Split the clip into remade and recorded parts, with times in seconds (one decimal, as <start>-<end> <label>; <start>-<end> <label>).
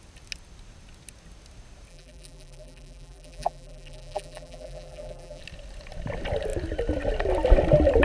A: 0.0-1.9 recorded; 1.9-5.4 remade; 5.4-8.0 recorded